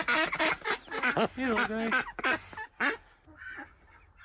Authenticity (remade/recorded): recorded